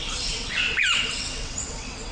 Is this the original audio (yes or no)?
no